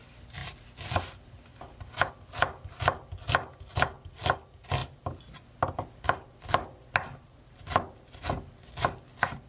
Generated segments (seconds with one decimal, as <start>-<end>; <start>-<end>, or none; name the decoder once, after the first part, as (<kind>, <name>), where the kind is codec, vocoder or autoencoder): none